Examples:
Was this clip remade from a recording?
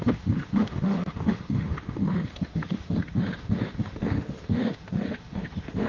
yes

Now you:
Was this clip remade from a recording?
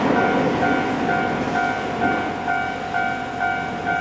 no